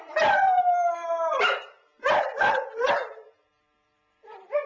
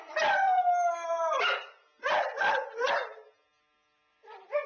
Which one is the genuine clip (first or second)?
second